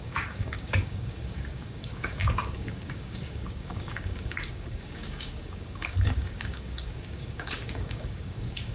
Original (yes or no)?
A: no